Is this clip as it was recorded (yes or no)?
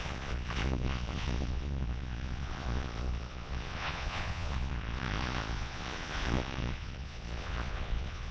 no